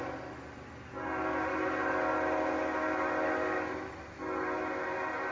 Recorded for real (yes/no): yes